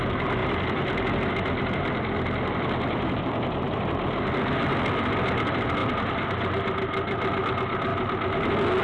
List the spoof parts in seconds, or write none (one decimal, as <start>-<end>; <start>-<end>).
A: none

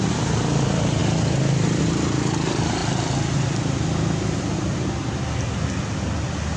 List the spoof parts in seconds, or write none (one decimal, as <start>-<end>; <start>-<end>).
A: none

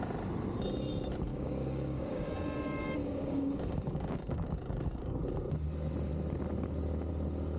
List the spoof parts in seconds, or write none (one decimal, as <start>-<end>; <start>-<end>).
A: 1.3-2.3; 3.0-5.2

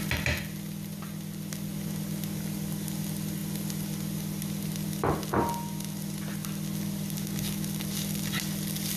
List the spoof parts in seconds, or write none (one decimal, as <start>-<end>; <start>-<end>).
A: none